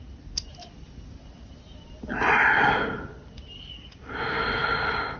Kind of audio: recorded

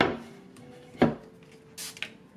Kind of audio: recorded